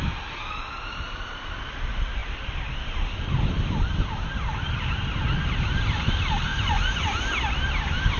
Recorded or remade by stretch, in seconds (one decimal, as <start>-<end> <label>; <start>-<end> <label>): 0.0-6.5 recorded; 6.5-7.0 remade; 7.0-8.2 recorded